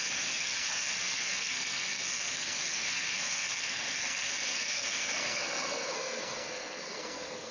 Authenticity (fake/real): fake